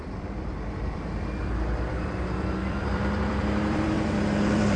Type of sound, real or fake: fake